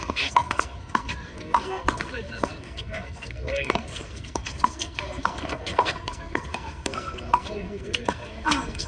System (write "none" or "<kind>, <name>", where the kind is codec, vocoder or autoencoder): codec, SNAC